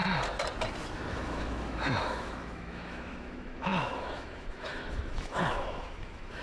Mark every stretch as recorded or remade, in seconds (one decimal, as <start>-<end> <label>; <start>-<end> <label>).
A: 0.0-1.1 recorded; 1.1-6.4 remade